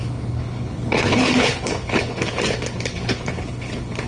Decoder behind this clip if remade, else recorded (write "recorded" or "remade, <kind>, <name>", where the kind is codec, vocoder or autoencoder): remade, codec, HILCodec